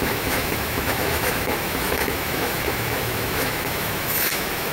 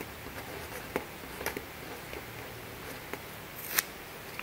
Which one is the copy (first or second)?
first